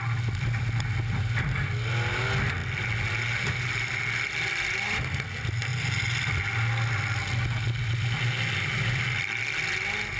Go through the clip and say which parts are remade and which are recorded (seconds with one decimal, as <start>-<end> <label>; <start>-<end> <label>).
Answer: 0.0-10.2 recorded